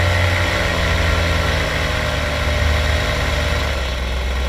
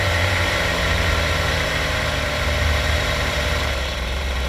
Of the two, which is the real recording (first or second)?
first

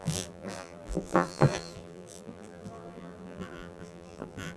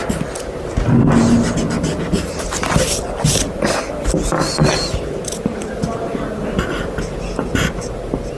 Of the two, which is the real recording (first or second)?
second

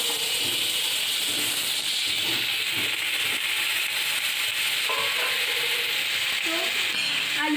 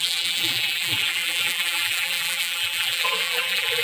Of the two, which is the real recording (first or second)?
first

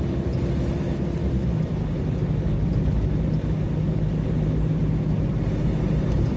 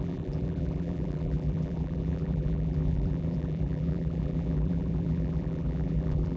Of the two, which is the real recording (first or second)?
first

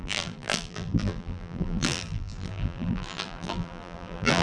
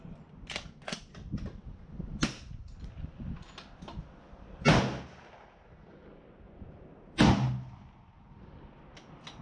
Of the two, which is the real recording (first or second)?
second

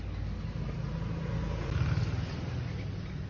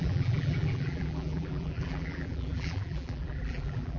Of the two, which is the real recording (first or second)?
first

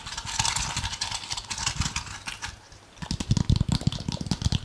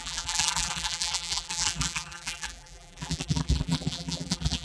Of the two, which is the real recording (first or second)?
first